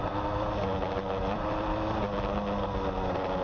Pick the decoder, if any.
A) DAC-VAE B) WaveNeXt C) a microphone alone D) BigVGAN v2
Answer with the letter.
C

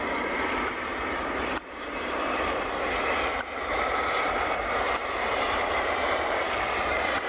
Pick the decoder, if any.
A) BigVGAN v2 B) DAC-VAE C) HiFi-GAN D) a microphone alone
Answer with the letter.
A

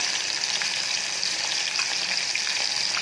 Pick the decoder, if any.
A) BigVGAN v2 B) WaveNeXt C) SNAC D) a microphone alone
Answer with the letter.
A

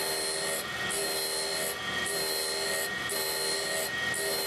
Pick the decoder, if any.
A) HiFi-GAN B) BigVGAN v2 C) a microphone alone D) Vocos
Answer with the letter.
C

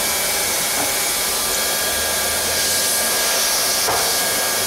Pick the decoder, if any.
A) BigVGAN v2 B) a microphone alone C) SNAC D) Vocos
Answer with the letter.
B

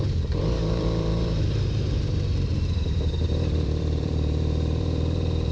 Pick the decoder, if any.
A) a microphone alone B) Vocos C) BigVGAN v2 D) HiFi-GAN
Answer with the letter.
C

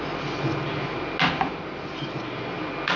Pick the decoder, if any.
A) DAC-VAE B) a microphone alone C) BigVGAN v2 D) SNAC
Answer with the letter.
B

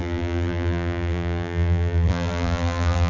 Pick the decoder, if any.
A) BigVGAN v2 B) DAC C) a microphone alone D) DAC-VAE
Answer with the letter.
A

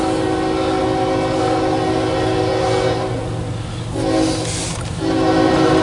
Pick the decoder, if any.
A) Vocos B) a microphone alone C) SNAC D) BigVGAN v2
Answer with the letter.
B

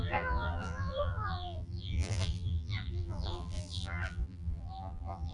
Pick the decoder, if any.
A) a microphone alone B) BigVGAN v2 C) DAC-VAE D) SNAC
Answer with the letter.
B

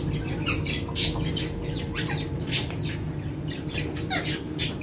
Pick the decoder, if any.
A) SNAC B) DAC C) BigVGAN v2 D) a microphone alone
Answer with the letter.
C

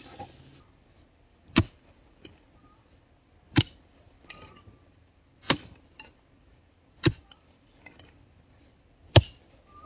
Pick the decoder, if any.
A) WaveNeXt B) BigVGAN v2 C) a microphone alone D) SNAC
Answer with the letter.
B